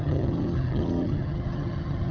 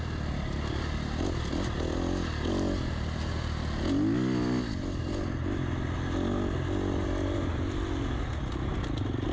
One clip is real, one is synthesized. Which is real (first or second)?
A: second